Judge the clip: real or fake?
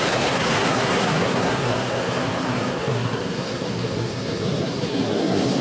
fake